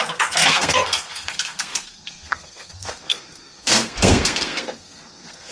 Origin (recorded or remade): remade